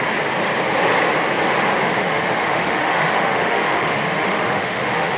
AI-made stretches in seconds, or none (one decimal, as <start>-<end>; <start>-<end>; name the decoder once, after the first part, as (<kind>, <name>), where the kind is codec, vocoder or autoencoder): 2.0-5.2 (autoencoder, DAC-VAE)